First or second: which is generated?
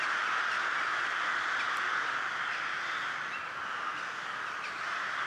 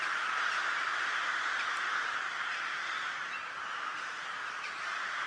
second